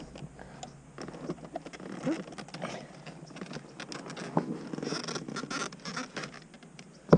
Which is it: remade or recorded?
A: recorded